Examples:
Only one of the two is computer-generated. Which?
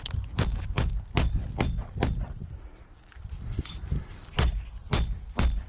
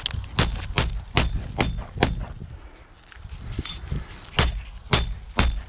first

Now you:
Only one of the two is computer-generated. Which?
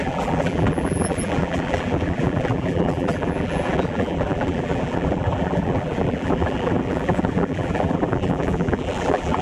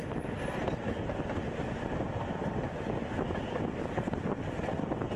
first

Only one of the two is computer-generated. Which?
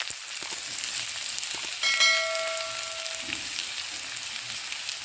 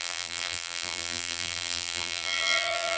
second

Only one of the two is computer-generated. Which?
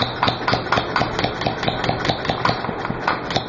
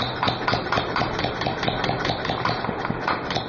second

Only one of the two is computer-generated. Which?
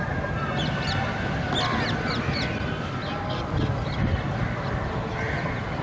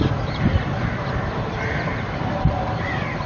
second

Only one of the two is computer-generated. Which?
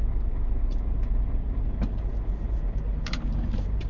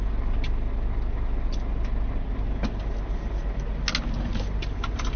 first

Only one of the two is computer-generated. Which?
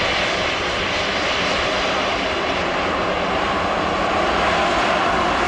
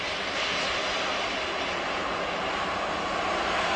first